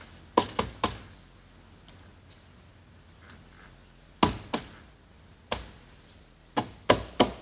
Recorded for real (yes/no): yes